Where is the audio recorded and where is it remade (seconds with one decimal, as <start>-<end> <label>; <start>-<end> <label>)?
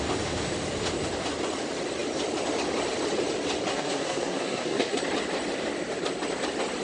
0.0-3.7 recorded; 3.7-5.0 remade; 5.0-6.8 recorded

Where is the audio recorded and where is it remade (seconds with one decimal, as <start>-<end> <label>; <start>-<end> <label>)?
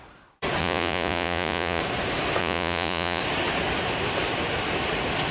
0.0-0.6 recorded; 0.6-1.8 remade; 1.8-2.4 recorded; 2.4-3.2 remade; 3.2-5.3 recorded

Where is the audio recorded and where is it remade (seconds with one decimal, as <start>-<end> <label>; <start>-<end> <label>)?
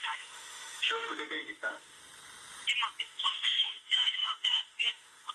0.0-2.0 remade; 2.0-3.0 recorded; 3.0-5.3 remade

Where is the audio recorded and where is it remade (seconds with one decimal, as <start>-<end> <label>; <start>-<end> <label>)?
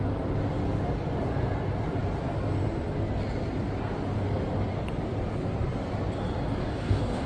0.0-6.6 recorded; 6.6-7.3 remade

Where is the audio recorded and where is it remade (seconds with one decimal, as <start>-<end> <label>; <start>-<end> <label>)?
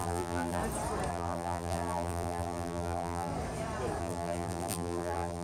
0.0-0.6 remade; 0.6-1.1 recorded; 1.1-3.3 remade; 3.3-4.0 recorded; 4.0-5.4 remade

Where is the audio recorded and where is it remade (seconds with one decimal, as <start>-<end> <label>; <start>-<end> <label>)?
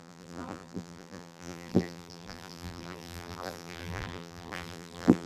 0.0-5.3 remade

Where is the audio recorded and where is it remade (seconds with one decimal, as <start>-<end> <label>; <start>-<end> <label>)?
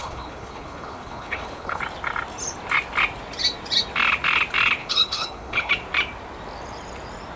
0.0-1.8 remade; 1.8-4.8 recorded; 4.8-5.7 remade; 5.7-7.4 recorded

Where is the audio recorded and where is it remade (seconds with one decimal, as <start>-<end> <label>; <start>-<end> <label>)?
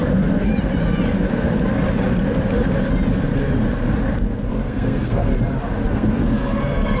0.0-0.5 remade; 0.5-4.5 recorded; 4.5-5.3 remade; 5.3-5.9 recorded; 5.9-7.0 remade